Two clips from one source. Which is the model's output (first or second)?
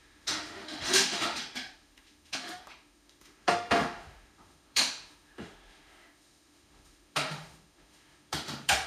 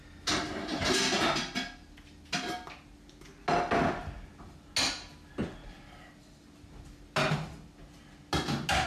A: first